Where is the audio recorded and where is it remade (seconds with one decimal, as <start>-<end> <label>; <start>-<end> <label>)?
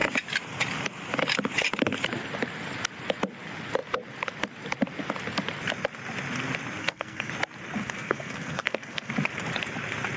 0.0-6.8 recorded; 6.8-7.3 remade; 7.3-7.8 recorded; 7.8-9.1 remade; 9.1-10.2 recorded